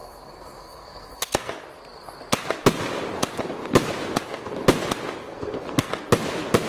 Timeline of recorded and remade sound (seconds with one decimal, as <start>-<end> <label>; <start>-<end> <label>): 0.0-1.5 remade; 1.5-5.2 recorded; 5.2-5.9 remade; 5.9-6.7 recorded